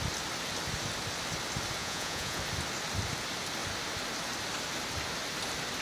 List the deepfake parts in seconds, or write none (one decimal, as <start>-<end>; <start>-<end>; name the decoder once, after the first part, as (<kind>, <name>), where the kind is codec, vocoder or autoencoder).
1.8-2.4 (vocoder, Vocos)